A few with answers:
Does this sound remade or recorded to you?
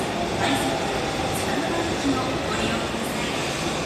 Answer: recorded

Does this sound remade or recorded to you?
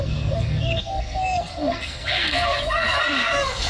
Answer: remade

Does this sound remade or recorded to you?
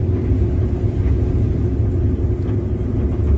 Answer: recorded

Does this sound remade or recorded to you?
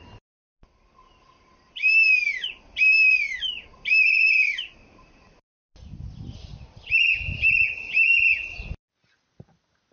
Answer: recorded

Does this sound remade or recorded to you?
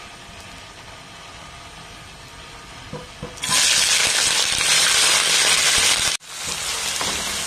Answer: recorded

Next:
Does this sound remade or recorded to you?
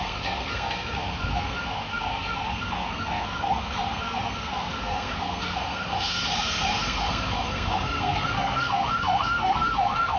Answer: remade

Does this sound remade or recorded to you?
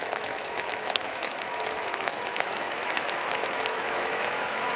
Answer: remade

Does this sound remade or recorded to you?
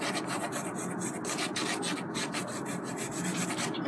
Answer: recorded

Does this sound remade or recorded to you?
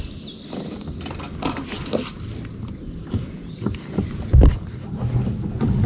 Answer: recorded